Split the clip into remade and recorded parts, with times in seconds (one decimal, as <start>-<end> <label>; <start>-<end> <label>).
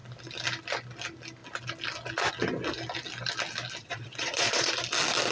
0.0-3.8 recorded; 3.8-4.7 remade; 4.7-5.3 recorded